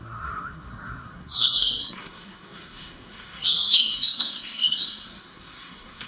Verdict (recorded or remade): remade